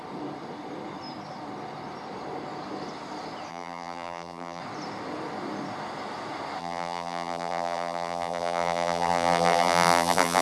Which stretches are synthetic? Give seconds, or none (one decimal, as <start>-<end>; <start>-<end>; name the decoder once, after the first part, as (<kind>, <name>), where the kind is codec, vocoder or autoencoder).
3.5-4.6 (vocoder, BigVGAN v2); 6.6-10.4